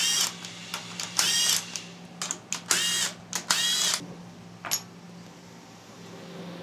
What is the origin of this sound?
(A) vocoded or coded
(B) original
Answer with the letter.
B